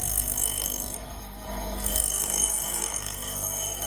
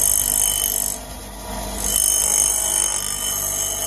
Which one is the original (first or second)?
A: second